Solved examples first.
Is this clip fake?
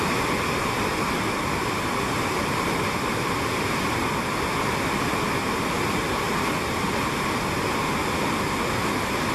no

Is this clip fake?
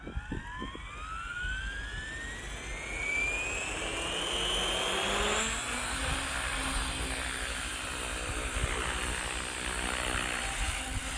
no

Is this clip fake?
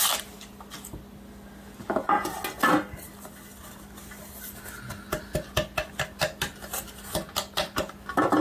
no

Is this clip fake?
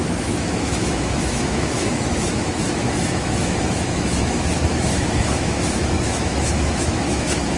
yes